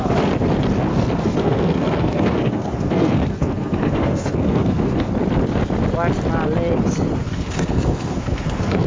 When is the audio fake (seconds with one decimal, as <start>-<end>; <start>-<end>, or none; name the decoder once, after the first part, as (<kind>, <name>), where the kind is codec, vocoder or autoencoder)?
0.9-5.1 (codec, SNAC); 7.2-8.9